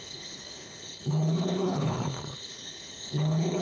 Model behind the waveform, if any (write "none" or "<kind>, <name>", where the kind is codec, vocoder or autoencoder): codec, HILCodec